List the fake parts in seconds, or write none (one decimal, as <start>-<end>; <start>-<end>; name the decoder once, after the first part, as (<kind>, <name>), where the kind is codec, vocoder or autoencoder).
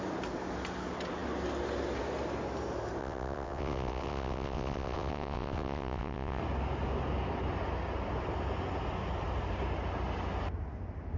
3.0-6.4 (vocoder, WaveNeXt)